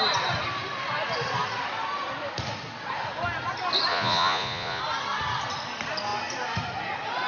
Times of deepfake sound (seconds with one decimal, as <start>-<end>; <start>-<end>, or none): 3.9-4.8

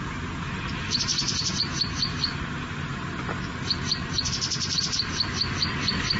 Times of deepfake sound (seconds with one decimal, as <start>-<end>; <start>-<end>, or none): none

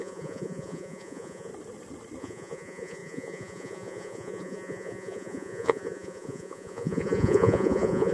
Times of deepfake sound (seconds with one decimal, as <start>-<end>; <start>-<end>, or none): 0.0-1.5; 2.2-8.1

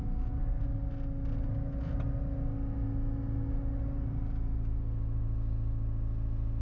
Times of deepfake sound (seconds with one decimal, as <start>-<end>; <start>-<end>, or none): none

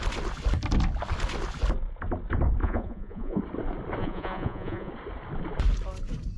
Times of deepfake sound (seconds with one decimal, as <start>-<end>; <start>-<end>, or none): 2.6-3.4; 4.0-4.9

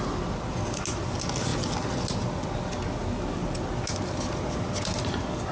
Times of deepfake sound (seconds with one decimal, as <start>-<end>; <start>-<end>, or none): none

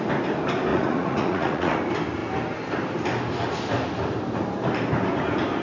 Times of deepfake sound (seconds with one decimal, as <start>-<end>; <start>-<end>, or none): 0.7-1.8

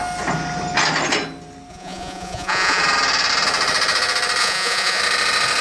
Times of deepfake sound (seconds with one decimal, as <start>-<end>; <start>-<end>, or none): 1.7-2.8; 4.4-5.0